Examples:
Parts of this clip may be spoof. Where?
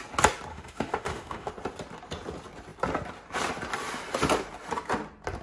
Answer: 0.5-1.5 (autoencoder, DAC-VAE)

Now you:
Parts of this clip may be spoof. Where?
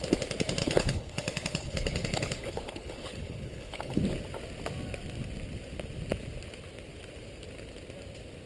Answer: 0.6-4.0 (codec, HILCodec)